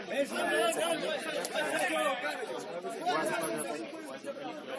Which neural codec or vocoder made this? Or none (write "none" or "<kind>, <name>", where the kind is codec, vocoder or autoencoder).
none